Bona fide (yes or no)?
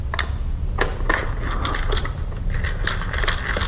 yes